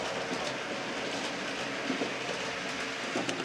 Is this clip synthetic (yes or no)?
no